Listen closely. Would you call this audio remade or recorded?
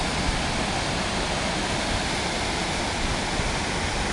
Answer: recorded